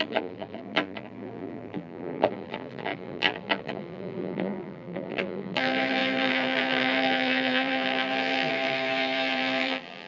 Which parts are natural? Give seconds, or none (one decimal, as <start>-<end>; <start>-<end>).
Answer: none